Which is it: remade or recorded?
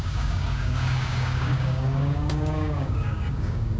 remade